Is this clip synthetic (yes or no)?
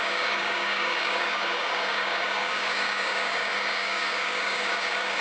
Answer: yes